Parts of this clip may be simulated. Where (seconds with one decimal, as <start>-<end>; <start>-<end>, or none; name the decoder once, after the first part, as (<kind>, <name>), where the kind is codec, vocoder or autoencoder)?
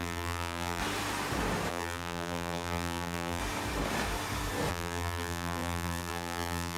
0.0-0.8 (vocoder, BigVGAN v2); 1.7-3.4; 4.7-6.8